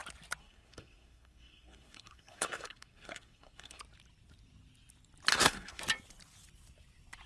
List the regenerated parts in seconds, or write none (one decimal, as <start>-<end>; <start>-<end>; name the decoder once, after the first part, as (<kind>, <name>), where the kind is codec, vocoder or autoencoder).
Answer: 0.4-3.8 (codec, SNAC); 5.3-5.8